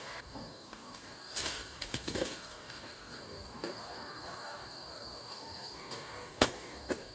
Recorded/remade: remade